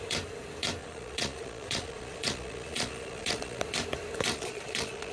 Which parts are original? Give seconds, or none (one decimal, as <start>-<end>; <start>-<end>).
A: 0.0-0.8; 3.6-4.3

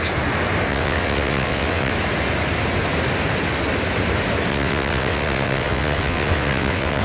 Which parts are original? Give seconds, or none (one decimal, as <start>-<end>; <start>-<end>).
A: 0.0-0.7; 1.9-4.5

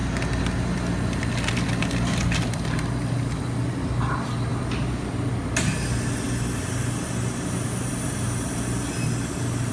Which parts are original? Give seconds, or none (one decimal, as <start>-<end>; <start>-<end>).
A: 0.0-9.7

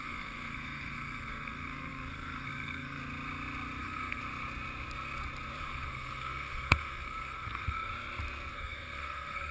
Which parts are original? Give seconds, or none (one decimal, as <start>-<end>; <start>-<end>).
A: 3.0-3.8; 4.2-5.6; 7.9-8.5

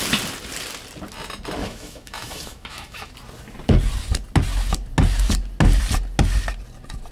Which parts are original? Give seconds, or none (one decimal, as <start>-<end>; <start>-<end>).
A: 0.0-1.6; 3.1-7.1

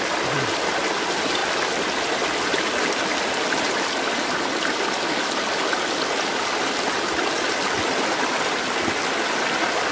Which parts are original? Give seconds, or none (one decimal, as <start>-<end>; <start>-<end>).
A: 0.0-9.9